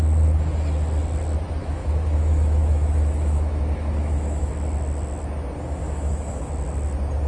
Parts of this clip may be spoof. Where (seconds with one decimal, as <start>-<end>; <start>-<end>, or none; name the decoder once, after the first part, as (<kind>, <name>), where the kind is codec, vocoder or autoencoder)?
1.6-4.5 (autoencoder, DAC-VAE); 5.8-6.5